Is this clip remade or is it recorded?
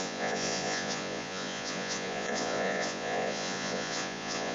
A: remade